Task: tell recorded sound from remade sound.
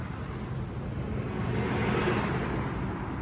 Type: recorded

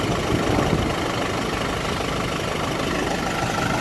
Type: recorded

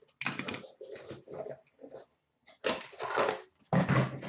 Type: recorded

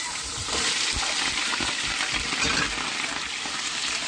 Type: recorded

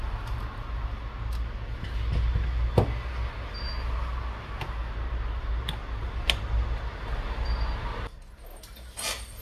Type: recorded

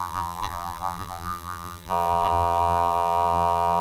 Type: remade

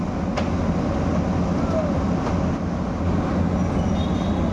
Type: recorded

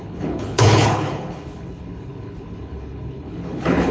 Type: remade